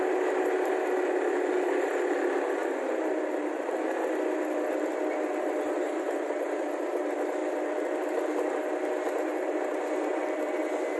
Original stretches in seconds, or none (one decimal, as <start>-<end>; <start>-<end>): 0.0-11.0